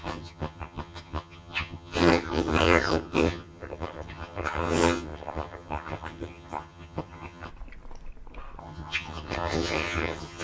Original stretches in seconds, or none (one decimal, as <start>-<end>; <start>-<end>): 7.5-8.6